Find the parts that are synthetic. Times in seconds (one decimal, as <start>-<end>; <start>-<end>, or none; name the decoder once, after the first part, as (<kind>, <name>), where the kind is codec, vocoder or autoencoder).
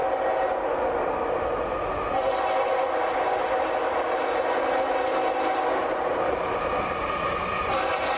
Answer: 5.8-8.2 (vocoder, BigVGAN v2)